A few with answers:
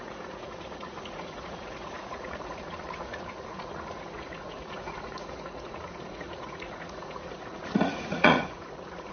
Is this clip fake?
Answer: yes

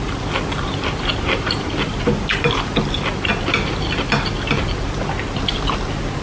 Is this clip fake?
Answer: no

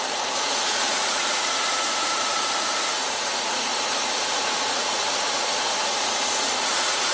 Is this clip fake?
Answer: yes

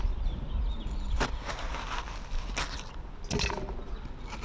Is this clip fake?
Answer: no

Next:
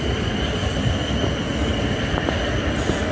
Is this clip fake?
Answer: no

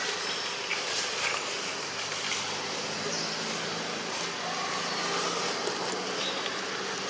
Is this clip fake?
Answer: no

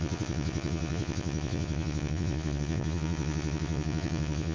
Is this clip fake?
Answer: yes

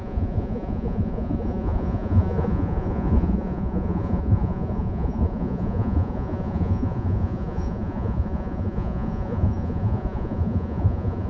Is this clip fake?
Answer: yes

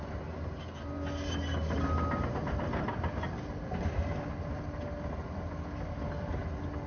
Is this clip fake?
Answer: no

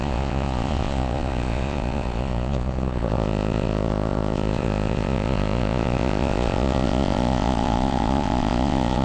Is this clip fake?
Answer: yes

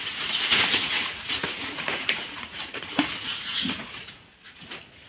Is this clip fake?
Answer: yes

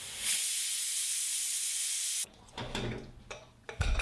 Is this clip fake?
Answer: yes